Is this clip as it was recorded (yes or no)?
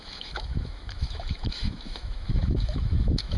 no